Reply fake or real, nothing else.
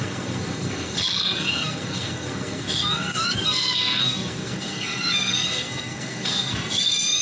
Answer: fake